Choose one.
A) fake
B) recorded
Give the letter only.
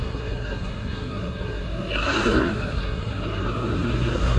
A